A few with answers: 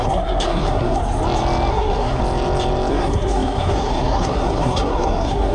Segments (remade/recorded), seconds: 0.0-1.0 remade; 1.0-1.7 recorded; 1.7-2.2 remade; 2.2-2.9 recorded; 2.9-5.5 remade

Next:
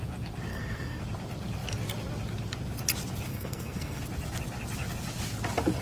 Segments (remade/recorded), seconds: 0.0-0.5 recorded; 0.5-1.0 remade; 1.0-3.3 recorded; 3.3-4.0 remade; 4.0-5.8 recorded

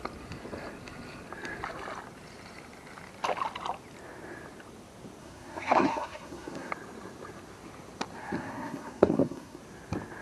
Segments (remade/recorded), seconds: 0.0-5.2 recorded; 5.2-6.7 remade; 6.7-8.2 recorded; 8.2-9.6 remade; 9.6-10.2 recorded

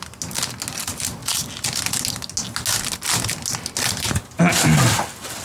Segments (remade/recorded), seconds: 0.0-5.4 recorded

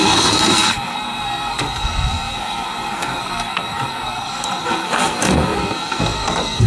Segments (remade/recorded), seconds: 0.0-6.7 remade

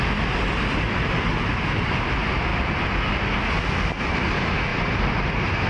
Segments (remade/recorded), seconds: 0.0-5.7 recorded

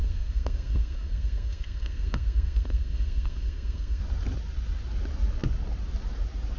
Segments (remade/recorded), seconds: 0.0-4.0 remade; 4.0-6.6 recorded

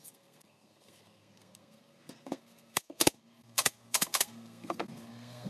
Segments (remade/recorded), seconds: 0.0-5.5 remade